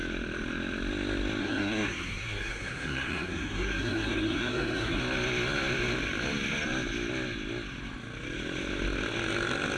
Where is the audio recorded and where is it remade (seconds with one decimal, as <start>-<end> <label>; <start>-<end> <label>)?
0.0-1.4 recorded; 1.4-5.0 remade; 5.0-9.8 recorded